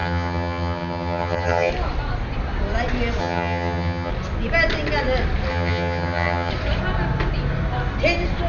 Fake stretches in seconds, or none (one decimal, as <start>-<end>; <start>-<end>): 0.0-1.7; 3.2-4.1; 5.5-6.5

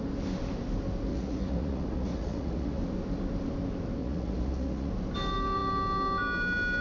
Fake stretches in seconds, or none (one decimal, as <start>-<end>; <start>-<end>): 1.1-2.8; 4.0-4.9